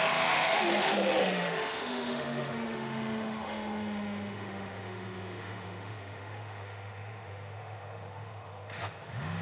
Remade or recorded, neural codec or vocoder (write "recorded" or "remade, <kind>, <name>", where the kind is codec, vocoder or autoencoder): remade, autoencoder, DAC-VAE